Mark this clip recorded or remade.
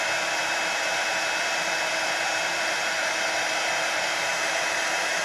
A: remade